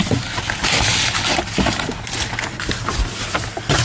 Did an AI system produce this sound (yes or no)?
no